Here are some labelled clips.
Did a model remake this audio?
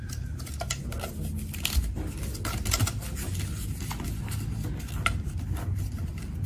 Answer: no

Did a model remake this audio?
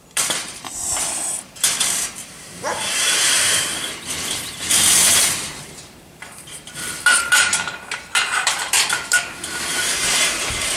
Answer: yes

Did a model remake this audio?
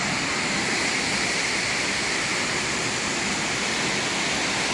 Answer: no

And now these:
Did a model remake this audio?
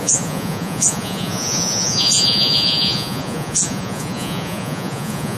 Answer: yes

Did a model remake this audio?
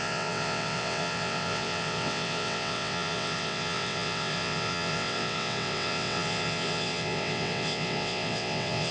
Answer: yes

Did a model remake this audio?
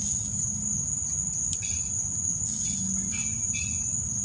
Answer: no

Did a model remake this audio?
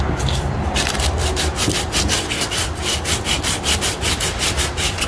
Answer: yes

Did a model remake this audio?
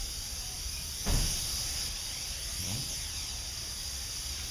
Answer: no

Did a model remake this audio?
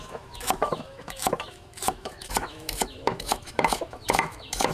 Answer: yes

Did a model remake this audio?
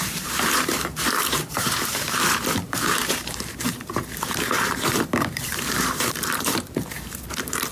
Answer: yes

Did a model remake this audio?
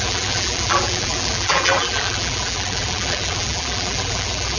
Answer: yes